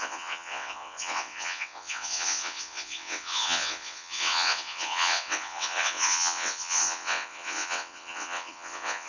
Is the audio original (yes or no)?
no